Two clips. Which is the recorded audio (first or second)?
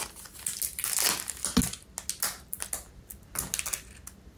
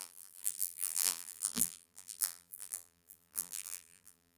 first